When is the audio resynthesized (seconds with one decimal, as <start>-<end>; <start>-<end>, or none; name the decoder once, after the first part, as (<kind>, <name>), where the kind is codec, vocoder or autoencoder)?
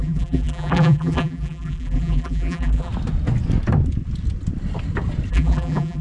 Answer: 0.0-2.9 (vocoder, BigVGAN v2); 5.3-6.0